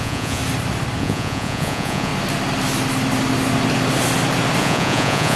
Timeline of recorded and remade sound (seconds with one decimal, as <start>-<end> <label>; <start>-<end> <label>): 0.0-0.4 remade; 0.4-1.0 recorded; 1.0-2.1 remade; 2.1-4.6 recorded; 4.6-5.4 remade